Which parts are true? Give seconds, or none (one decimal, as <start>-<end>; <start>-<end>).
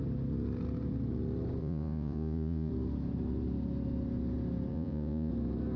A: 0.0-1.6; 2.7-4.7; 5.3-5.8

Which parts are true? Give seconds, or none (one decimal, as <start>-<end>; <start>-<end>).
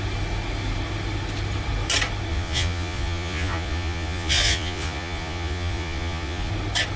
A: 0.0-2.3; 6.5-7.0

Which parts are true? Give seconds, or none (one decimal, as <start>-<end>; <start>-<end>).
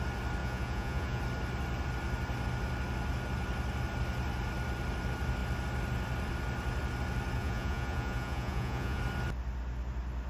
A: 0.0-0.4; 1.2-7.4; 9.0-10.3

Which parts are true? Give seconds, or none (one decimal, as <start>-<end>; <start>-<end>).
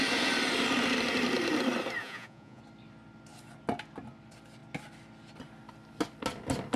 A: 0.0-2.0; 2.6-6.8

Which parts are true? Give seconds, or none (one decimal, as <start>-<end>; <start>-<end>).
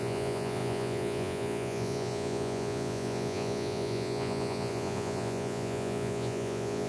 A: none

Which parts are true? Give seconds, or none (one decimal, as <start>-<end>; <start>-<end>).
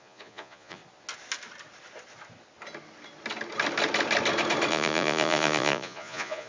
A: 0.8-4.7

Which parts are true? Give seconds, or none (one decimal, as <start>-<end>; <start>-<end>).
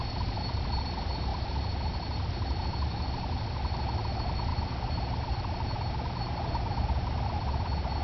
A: 0.0-8.0